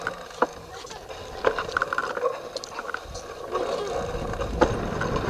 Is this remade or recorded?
recorded